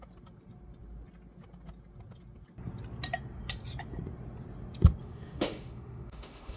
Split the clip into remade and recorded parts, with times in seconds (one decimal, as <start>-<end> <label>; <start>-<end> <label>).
0.0-5.0 recorded; 5.0-6.6 remade